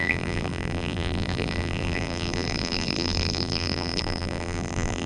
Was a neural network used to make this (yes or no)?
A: yes